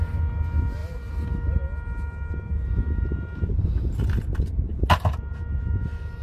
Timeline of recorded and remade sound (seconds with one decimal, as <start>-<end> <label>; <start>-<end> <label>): 0.0-6.2 recorded